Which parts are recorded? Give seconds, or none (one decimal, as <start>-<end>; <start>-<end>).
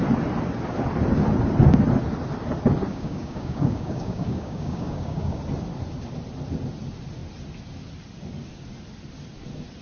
0.0-2.9; 5.4-9.8